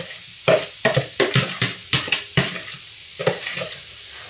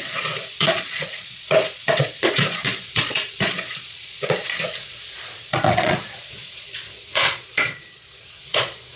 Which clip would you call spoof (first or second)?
second